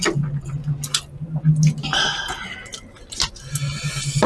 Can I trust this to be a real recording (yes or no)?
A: yes